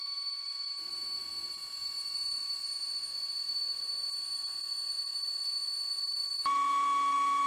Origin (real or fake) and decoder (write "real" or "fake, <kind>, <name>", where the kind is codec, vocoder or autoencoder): fake, vocoder, Vocos